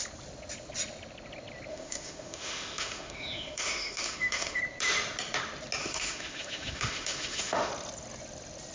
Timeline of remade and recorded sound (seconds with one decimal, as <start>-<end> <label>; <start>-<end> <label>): 0.0-1.7 recorded; 1.7-4.6 remade; 4.6-5.8 recorded; 5.8-7.7 remade; 7.7-8.7 recorded